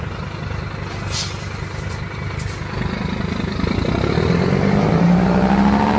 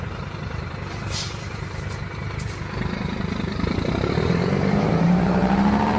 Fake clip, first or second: second